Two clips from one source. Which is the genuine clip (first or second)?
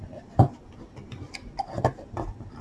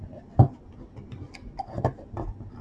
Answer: second